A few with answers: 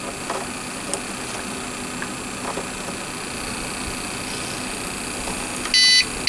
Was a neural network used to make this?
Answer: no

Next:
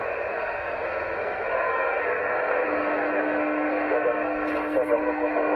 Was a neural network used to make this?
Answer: yes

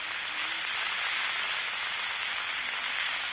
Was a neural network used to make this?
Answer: no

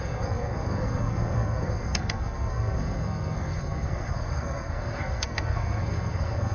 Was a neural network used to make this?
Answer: yes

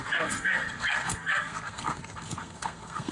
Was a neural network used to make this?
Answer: yes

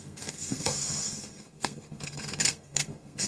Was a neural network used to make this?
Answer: yes